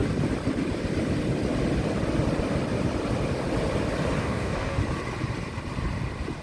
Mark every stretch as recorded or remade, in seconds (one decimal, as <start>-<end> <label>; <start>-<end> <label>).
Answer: 0.0-4.2 recorded; 4.2-4.8 remade; 4.8-6.4 recorded